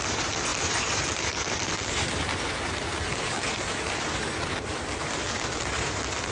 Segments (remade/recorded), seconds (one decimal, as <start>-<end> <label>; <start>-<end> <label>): 0.0-6.3 recorded